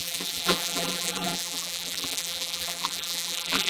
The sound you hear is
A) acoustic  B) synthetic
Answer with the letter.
B